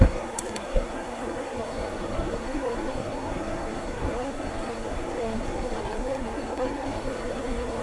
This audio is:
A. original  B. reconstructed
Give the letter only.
B